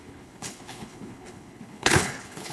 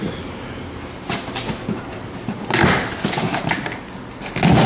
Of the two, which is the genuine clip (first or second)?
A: second